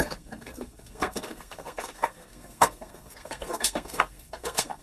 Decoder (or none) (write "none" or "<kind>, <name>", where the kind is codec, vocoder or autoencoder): codec, SNAC